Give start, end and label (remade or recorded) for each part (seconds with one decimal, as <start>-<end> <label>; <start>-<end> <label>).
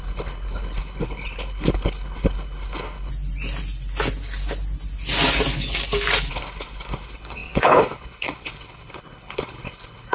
0.0-3.1 remade; 3.1-6.3 recorded; 6.3-10.1 remade